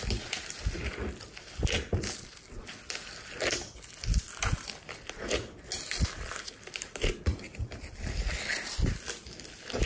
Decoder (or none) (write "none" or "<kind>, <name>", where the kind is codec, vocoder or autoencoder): none